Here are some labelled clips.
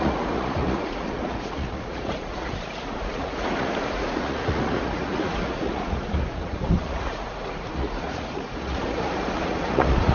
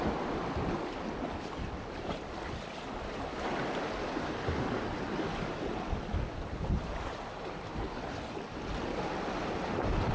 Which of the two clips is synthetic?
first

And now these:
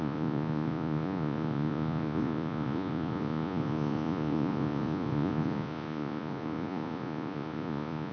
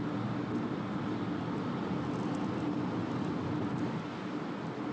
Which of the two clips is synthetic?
first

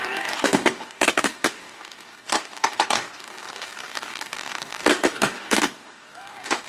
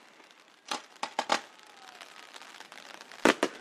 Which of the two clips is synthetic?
first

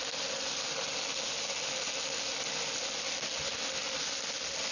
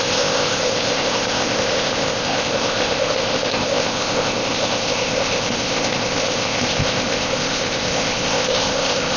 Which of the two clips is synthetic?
second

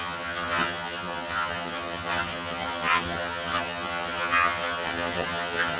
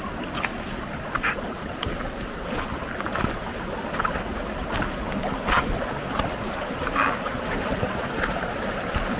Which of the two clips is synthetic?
first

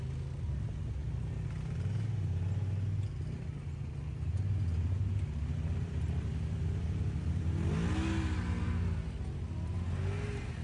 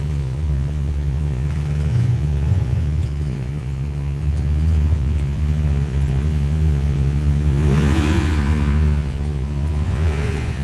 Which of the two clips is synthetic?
second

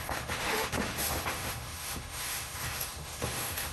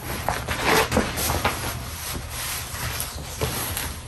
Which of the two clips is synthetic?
first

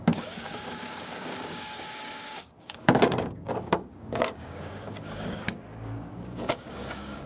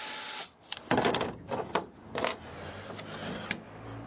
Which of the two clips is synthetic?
first